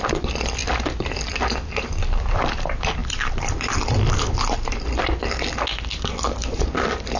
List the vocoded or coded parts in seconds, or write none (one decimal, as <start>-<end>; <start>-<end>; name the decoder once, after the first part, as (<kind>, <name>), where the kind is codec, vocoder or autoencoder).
0.6-1.3 (vocoder, BigVGAN v2); 3.0-5.2